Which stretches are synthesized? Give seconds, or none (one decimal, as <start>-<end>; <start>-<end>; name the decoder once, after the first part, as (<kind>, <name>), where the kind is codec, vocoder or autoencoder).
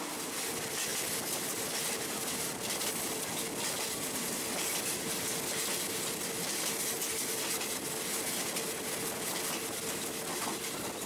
none